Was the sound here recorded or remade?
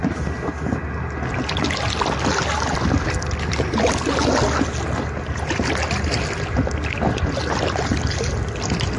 recorded